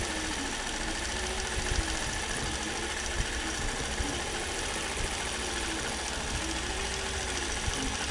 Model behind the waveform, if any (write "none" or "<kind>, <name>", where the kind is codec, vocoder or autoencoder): none